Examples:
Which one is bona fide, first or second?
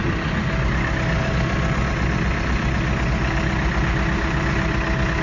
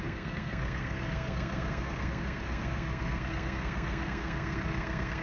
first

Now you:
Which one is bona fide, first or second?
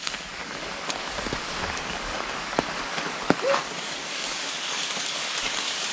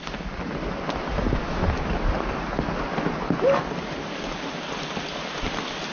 second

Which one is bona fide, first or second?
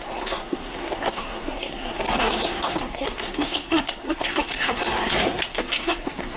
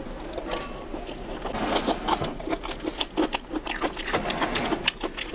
second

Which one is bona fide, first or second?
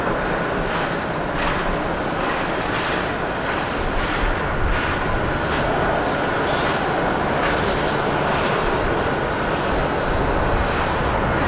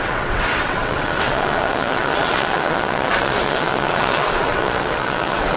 first